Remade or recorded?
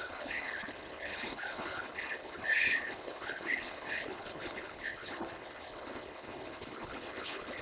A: remade